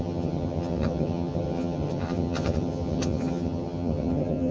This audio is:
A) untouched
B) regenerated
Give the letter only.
B